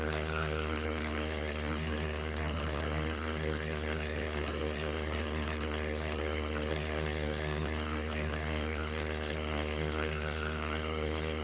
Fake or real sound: fake